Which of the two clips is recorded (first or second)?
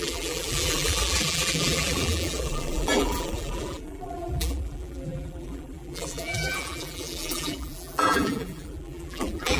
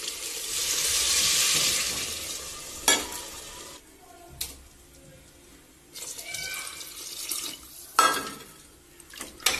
second